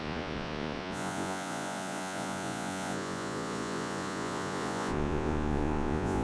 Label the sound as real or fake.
fake